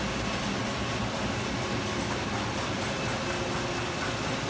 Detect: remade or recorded recorded